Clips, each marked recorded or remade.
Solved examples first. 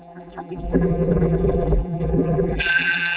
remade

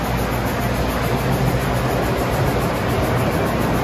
recorded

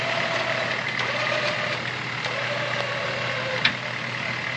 recorded